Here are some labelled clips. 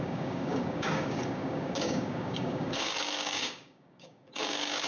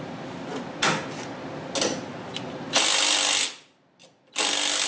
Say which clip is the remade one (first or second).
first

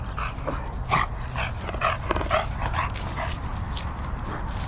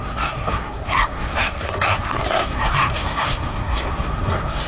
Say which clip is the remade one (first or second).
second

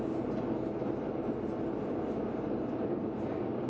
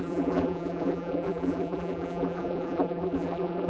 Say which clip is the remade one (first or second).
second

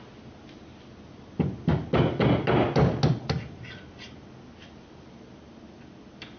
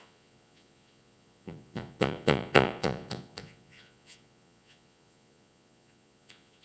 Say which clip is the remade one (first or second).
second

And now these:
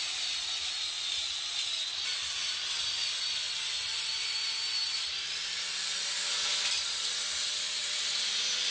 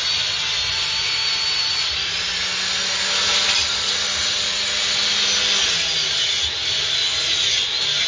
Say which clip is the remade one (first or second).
first